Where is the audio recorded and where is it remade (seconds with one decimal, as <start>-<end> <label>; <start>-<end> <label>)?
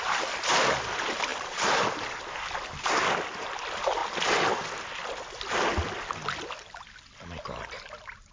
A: 0.0-8.3 recorded